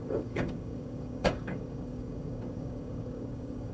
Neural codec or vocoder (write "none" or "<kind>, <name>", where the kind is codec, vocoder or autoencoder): codec, DAC